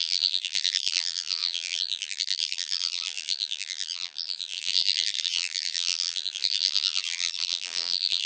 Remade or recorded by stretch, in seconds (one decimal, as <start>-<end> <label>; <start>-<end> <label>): 0.0-8.3 remade